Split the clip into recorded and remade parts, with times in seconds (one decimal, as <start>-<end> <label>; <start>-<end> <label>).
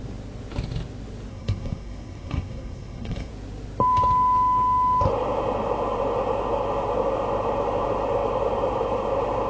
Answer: 0.0-1.3 recorded; 1.3-3.3 remade; 3.3-9.5 recorded